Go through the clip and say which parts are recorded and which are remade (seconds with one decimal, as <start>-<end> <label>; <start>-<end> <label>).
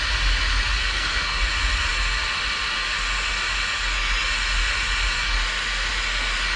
0.0-0.8 recorded; 0.8-1.4 remade; 1.4-6.6 recorded